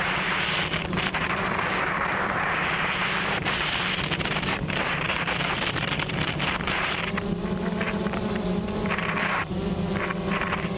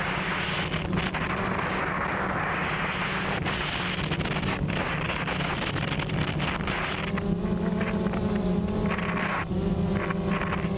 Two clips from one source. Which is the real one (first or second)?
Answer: second